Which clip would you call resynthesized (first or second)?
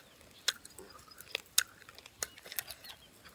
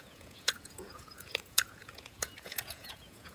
second